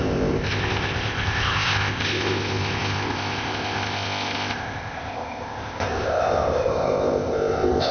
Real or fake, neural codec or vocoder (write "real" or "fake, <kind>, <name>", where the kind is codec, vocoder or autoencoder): fake, codec, ZipCodec